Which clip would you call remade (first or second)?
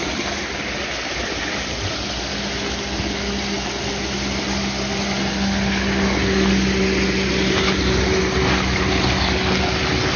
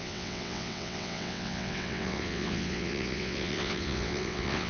second